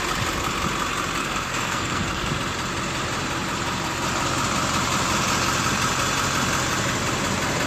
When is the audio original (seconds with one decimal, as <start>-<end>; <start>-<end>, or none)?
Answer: 0.0-1.2; 2.3-7.7